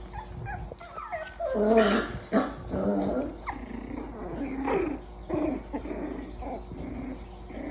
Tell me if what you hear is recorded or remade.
recorded